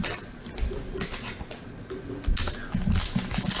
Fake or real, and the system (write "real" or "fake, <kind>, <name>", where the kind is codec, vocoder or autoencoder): real